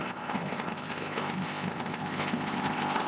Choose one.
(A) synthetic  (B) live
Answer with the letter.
A